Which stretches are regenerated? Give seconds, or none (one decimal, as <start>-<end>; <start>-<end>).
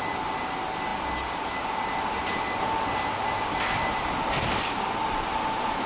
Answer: none